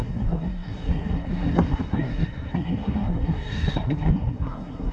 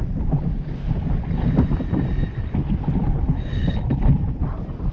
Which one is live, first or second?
second